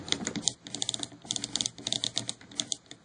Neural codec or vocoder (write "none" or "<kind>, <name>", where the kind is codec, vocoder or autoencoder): none